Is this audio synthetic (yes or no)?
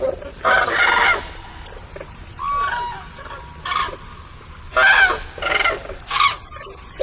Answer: no